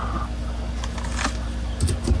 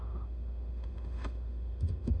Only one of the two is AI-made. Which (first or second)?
second